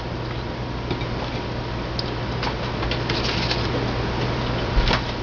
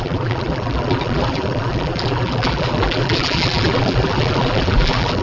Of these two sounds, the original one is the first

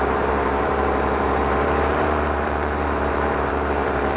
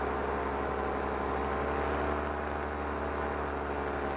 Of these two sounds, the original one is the second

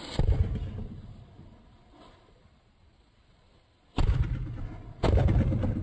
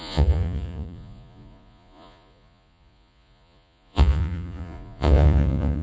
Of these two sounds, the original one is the first